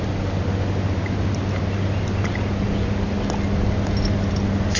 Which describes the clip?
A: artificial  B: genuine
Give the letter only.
B